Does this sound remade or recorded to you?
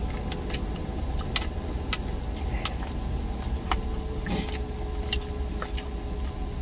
recorded